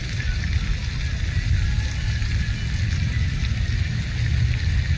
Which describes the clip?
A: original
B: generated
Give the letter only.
A